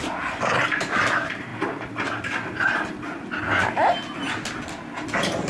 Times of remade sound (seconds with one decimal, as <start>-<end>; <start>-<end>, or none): none